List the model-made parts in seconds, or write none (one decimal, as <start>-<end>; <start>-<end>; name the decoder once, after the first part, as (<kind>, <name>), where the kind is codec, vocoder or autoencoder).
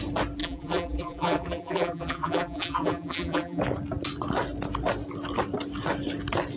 0.4-3.6 (vocoder, BigVGAN v2)